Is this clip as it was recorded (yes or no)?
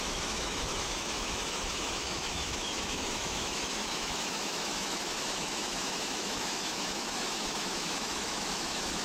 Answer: no